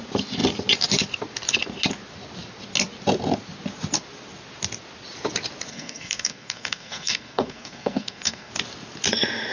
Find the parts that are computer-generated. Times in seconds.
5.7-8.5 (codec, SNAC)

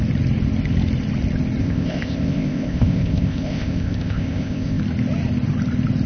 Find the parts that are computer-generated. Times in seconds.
1.6-4.8 (codec, ZipCodec)

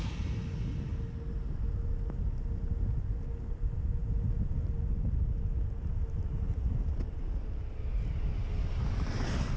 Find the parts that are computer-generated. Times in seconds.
none